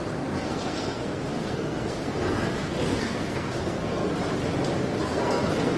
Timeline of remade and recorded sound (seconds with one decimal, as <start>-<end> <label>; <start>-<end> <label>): 0.0-4.0 remade; 4.0-5.0 recorded; 5.0-5.8 remade